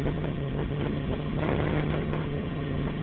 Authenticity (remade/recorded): remade